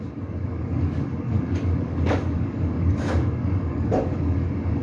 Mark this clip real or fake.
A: fake